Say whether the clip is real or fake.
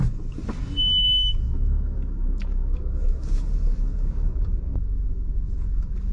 fake